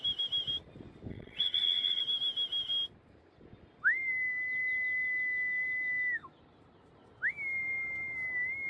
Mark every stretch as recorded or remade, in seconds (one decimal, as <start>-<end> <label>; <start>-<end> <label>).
0.0-1.1 recorded; 1.1-2.0 remade; 2.0-8.7 recorded